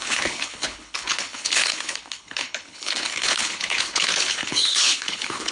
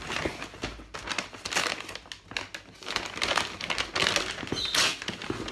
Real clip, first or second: second